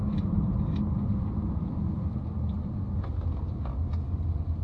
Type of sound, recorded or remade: recorded